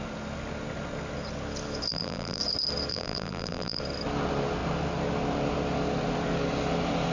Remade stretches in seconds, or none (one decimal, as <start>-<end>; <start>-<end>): 1.9-2.4; 2.9-3.8